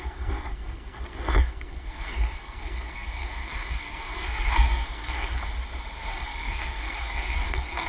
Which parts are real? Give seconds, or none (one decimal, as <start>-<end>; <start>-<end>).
5.4-6.1